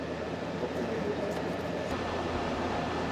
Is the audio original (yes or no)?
no